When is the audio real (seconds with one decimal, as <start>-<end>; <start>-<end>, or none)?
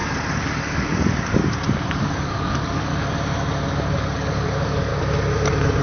0.0-0.6; 1.4-2.0; 2.9-3.7; 4.9-5.8